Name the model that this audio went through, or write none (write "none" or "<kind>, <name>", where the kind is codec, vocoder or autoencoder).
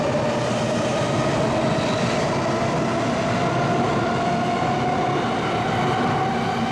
none